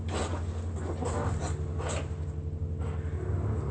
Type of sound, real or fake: real